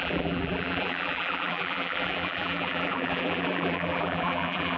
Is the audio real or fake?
fake